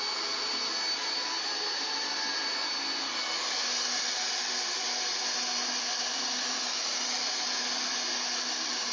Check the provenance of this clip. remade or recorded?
recorded